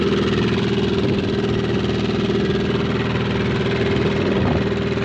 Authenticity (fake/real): real